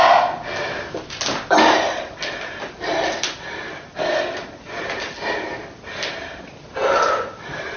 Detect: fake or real real